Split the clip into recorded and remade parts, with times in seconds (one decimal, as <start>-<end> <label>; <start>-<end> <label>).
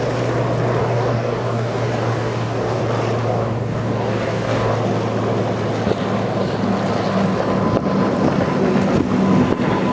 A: 0.0-0.8 recorded; 0.8-2.8 remade; 2.8-3.2 recorded; 3.2-4.7 remade; 4.7-9.9 recorded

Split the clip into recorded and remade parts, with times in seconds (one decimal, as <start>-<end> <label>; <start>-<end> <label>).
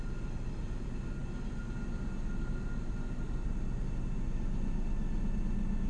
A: 0.0-5.9 recorded